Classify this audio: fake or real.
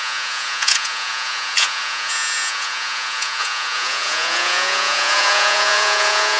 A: fake